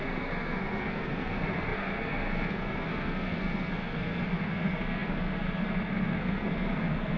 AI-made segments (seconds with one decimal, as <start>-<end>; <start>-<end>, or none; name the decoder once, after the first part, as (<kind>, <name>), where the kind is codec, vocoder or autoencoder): 0.0-7.2 (codec, SNAC)